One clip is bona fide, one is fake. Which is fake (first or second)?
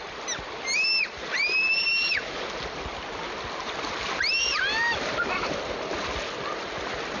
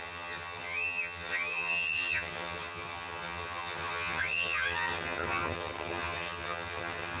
second